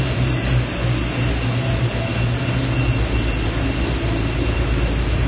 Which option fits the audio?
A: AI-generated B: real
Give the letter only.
B